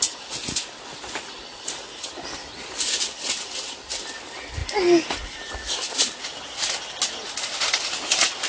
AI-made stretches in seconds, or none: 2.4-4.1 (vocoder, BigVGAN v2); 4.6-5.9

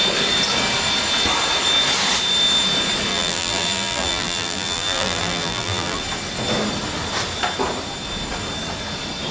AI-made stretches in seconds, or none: 3.1-6.0 (vocoder, BigVGAN v2)

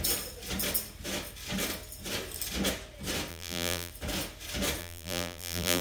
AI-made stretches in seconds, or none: 3.3-3.9 (vocoder, BigVGAN v2); 4.8-5.8

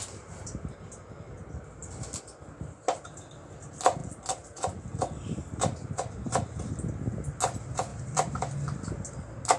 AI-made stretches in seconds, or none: 7.9-8.4 (vocoder, BigVGAN v2)